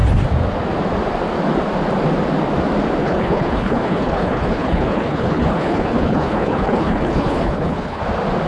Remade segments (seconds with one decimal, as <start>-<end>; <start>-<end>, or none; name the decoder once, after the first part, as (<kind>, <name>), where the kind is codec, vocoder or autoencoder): 3.0-8.0 (codec, HILCodec)